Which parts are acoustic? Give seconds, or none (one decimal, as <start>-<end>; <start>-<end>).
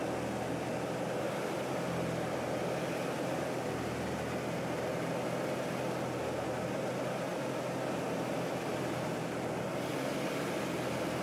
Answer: 0.0-11.2